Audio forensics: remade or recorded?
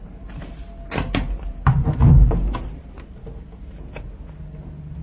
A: recorded